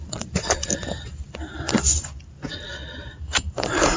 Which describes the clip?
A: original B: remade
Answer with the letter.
B